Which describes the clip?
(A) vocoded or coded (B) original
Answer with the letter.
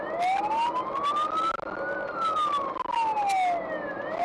B